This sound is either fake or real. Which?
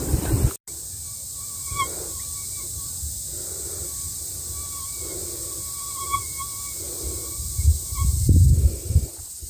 real